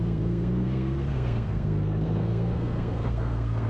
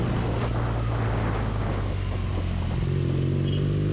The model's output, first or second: first